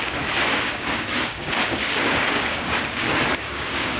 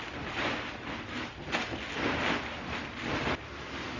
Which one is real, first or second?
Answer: second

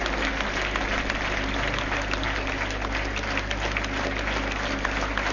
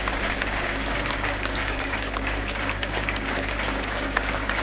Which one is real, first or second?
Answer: first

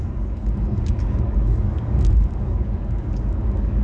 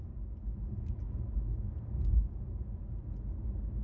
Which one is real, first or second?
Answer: second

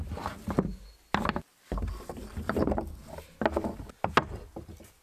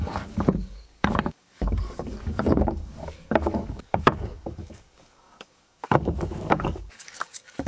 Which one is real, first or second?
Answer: first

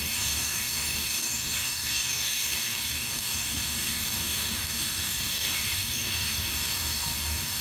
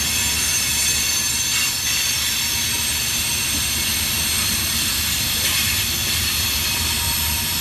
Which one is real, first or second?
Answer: second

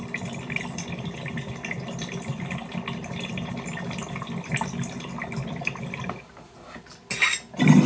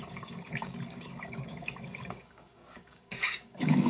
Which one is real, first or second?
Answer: first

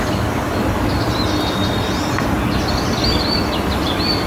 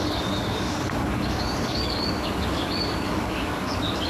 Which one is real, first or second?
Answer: first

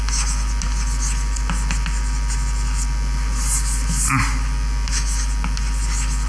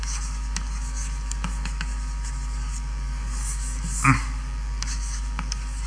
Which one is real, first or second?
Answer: first